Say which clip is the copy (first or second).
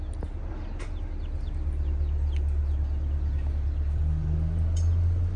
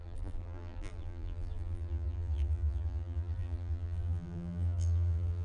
second